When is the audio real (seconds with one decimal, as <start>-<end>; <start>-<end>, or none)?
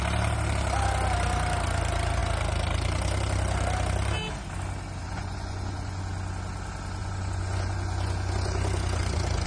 0.0-5.0; 6.0-7.0